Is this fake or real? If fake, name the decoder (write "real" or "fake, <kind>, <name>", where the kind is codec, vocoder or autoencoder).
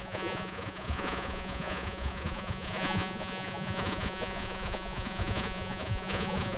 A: fake, vocoder, Vocos